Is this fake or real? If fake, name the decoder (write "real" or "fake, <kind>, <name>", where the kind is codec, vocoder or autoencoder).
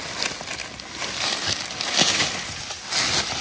real